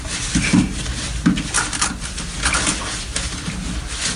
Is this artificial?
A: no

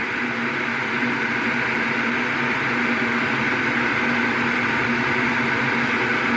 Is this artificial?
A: no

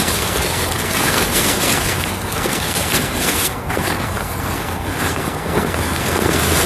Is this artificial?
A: yes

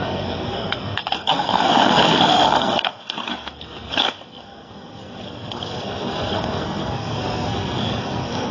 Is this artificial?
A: yes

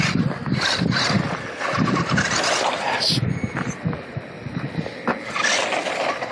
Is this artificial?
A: no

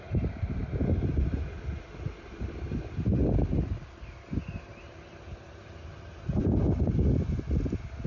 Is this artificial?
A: no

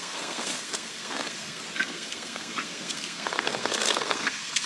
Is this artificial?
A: yes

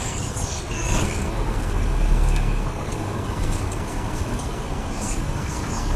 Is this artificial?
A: yes